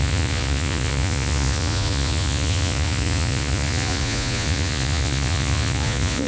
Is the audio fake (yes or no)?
yes